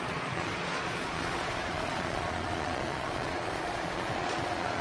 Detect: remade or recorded remade